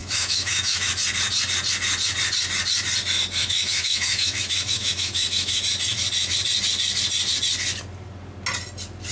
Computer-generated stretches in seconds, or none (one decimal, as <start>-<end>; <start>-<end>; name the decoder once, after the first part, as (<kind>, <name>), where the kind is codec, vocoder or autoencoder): 0.0-0.9 (autoencoder, DAC-VAE); 3.4-5.6